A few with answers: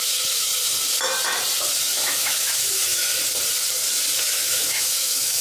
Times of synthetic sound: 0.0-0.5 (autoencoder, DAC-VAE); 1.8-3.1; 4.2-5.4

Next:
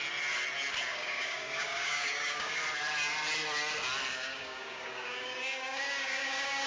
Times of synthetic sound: 0.9-2.6 (codec, DAC); 4.1-6.7

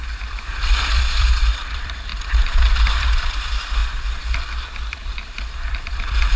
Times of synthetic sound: 0.0-2.1 (vocoder, BigVGAN v2); 3.0-3.8; 4.4-6.4

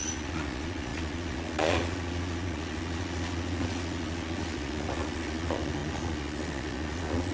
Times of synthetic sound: 0.0-7.3 (vocoder, Vocos)